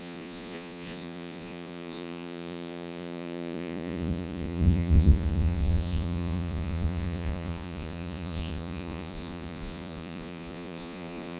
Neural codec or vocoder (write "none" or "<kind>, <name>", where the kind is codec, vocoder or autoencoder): vocoder, Vocos